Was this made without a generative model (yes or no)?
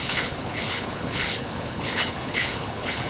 no